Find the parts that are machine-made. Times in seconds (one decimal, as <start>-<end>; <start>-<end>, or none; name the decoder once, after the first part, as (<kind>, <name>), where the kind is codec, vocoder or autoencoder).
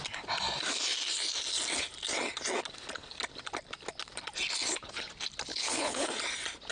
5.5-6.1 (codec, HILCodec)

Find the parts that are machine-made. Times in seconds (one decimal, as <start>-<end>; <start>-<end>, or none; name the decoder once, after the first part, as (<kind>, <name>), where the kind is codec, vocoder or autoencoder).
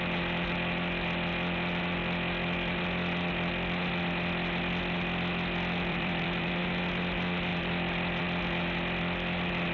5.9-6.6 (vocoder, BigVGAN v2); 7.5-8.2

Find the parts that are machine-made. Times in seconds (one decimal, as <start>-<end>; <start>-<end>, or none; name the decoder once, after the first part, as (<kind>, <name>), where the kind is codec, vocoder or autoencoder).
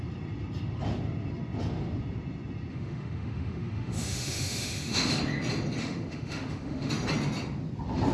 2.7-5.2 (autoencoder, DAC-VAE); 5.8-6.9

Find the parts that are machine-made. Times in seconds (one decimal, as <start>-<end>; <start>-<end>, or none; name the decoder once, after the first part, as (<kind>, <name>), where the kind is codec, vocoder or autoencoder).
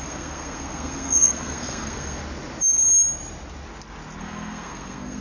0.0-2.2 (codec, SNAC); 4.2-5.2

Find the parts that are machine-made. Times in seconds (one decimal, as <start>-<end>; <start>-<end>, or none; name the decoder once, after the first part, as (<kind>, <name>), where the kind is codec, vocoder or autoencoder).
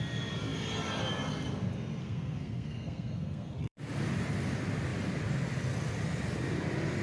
2.0-3.8 (codec, SNAC)